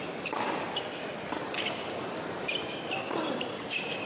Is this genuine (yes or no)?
yes